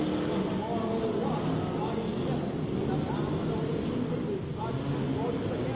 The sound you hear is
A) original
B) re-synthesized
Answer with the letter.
A